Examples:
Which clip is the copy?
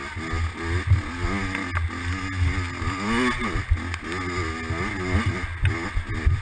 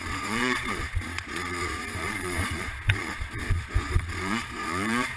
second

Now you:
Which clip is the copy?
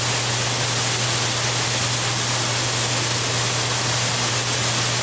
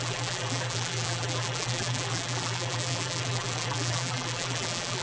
second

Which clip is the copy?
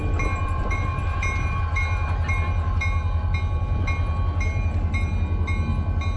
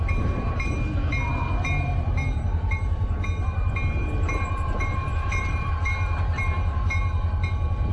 second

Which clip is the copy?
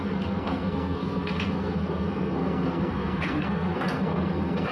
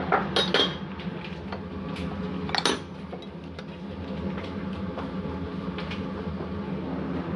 first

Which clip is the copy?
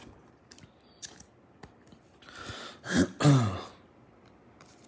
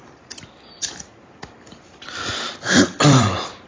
second